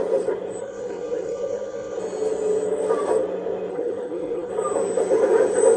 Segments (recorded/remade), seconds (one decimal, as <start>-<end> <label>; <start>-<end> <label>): 0.0-0.6 recorded; 0.6-2.0 remade; 2.0-3.7 recorded; 3.7-4.5 remade; 4.5-5.8 recorded